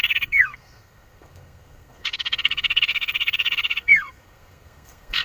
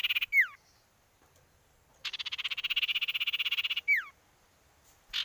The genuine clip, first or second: second